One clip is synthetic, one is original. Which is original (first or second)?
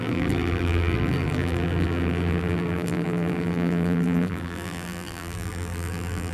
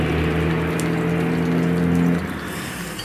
second